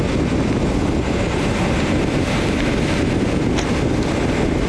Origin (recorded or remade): recorded